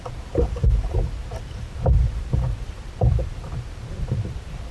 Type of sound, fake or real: fake